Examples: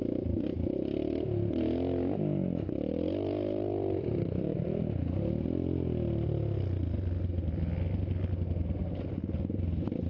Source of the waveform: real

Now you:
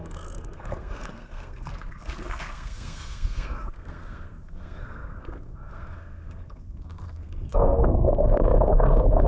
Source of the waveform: fake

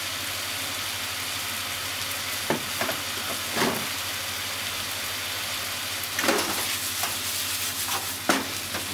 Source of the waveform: real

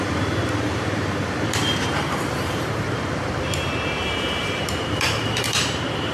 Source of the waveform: fake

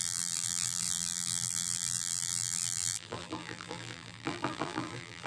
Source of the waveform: fake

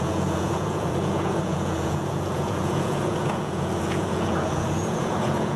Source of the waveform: fake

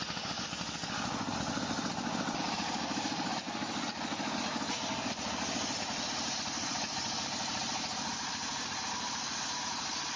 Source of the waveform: real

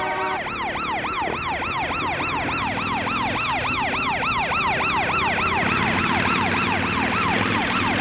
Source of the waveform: real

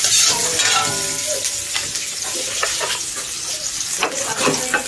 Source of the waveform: real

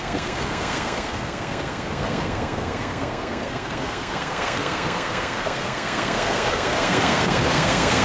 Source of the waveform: fake